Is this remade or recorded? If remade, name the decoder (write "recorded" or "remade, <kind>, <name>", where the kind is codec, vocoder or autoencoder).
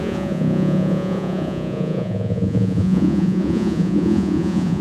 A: remade, vocoder, Vocos